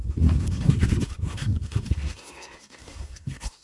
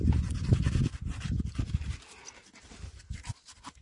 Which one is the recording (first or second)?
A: second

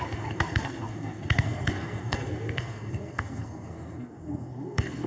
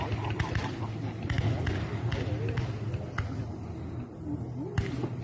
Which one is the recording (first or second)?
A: second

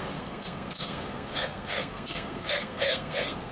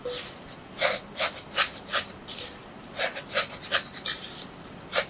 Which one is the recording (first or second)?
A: second